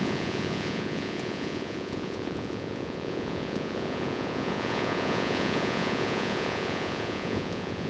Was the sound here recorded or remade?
remade